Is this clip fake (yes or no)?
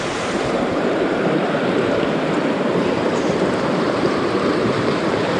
yes